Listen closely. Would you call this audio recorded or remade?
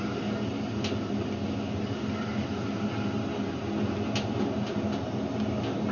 recorded